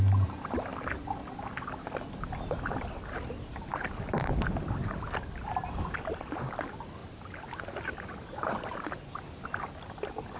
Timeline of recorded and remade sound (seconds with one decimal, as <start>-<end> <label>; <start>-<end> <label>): 0.0-10.4 recorded